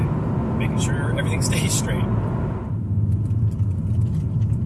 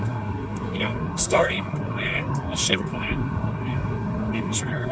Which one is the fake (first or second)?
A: second